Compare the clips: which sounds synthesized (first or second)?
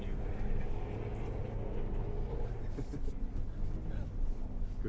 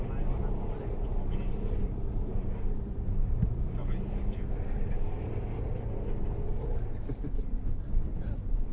second